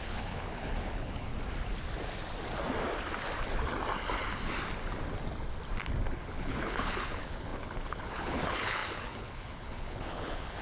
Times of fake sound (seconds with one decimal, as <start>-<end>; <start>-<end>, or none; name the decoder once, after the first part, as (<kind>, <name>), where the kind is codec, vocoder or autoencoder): 0.0-1.3 (codec, HILCodec); 6.1-10.6